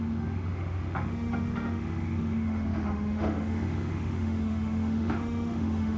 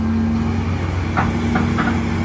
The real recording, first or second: second